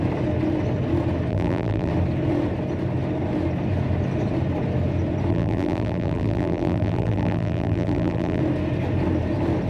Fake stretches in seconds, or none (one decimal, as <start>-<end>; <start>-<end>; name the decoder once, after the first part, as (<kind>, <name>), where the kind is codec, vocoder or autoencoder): 1.3-1.9 (vocoder, BigVGAN v2); 5.3-8.4